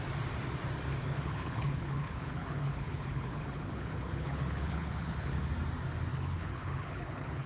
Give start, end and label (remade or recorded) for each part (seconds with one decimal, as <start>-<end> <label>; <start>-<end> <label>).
0.0-1.0 recorded; 1.0-5.5 remade; 5.5-6.1 recorded; 6.1-7.5 remade